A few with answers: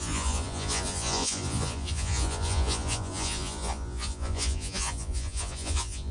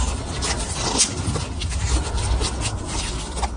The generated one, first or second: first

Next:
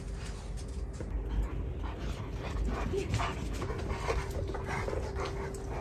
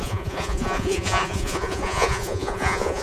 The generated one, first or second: second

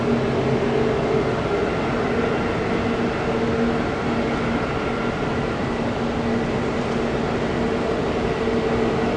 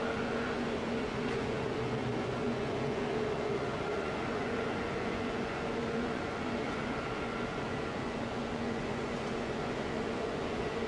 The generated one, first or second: second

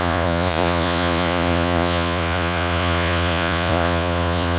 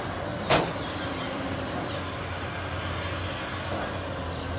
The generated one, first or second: first